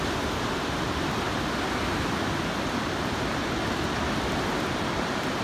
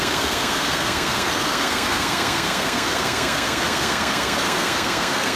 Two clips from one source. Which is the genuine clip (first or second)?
first